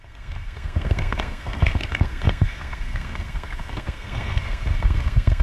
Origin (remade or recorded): remade